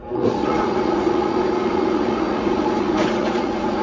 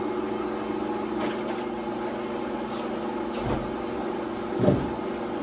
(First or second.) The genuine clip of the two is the second